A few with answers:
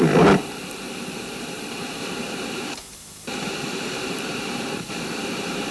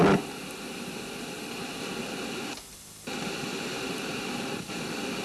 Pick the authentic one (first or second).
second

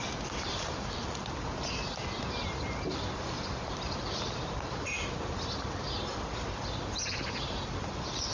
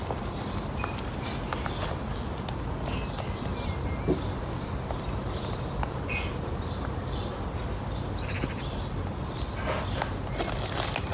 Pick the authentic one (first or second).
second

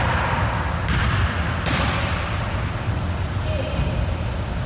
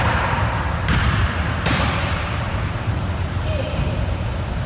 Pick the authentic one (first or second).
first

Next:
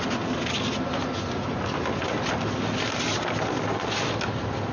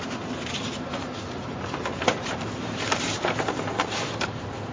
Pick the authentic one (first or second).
first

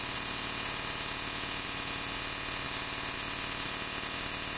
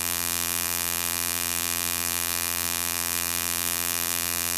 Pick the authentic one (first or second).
first